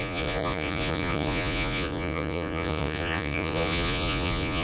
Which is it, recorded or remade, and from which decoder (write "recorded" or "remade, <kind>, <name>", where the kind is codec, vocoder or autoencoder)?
remade, vocoder, Vocos